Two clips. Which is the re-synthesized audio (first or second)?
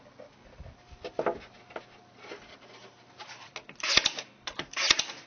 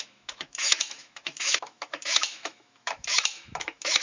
second